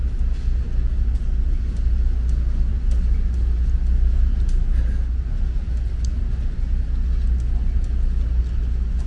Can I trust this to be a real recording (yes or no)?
yes